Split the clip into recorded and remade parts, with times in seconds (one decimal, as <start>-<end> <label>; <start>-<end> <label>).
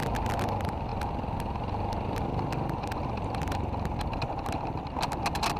0.0-5.6 recorded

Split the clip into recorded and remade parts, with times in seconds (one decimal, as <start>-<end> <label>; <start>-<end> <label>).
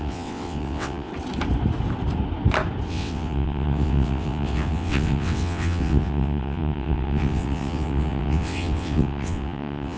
0.0-1.1 remade; 1.1-2.9 recorded; 2.9-10.0 remade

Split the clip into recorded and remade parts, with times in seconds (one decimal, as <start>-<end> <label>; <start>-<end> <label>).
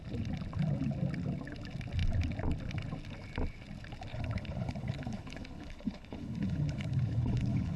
0.0-4.1 recorded; 4.1-7.8 remade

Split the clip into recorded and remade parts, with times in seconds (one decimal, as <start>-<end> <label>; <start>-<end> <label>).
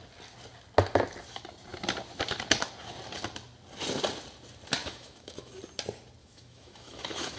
0.0-4.8 recorded; 4.8-5.6 remade; 5.6-6.2 recorded; 6.2-7.4 remade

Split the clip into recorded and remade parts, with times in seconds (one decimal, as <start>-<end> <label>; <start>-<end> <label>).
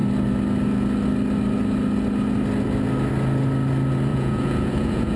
0.0-4.1 recorded; 4.1-5.2 remade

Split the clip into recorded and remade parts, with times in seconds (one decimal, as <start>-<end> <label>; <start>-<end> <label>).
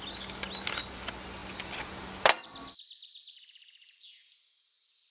0.0-5.1 recorded